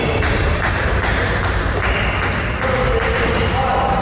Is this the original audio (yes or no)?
yes